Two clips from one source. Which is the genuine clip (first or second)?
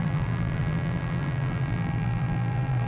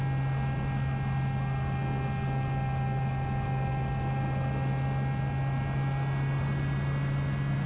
second